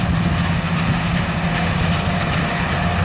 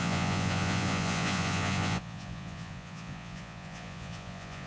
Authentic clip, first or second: first